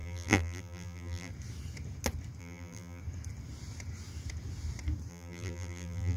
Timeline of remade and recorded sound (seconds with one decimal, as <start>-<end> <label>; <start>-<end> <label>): 0.0-1.3 remade; 1.3-2.4 recorded; 2.4-3.0 remade; 3.0-5.1 recorded; 5.1-6.2 remade